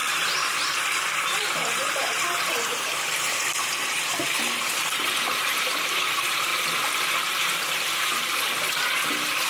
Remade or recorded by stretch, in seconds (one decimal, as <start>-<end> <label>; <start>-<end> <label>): 0.0-6.5 remade; 6.5-7.2 recorded; 7.2-9.5 remade